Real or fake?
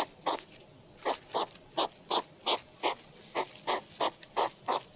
real